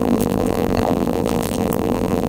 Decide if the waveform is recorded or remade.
remade